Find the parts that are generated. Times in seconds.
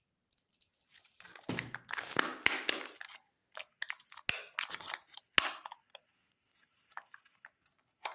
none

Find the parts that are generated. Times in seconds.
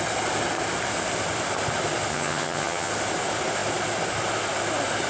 2.1-2.9 (vocoder, HiFi-GAN)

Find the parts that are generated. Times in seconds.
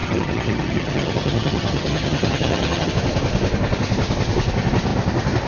0.0-2.9 (vocoder, HiFi-GAN)